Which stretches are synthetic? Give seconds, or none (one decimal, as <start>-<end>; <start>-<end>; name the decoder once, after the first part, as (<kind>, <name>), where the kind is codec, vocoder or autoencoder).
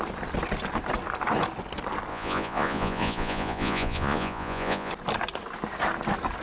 2.1-4.9 (vocoder, Vocos)